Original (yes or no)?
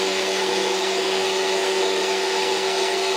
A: no